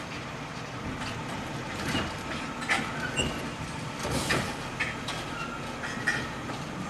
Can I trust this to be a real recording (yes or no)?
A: yes